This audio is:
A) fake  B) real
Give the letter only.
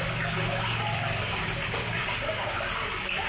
A